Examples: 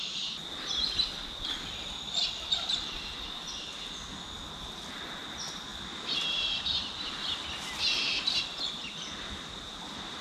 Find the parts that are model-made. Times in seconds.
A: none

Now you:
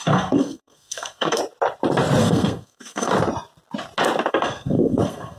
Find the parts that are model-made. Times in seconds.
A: 0.0-1.4 (codec, SNAC); 2.2-3.1; 4.3-5.4

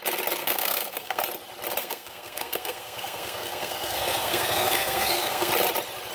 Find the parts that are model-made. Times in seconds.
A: 0.4-1.2 (codec, SNAC); 1.8-5.5

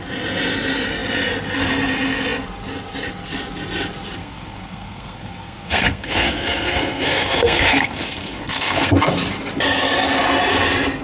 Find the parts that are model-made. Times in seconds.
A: 4.2-8.9 (codec, SNAC)

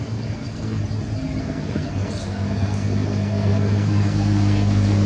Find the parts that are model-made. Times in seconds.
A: 0.0-0.8 (codec, SNAC); 1.4-5.1

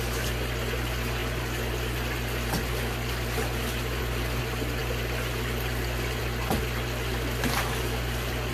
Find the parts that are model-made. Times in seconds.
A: none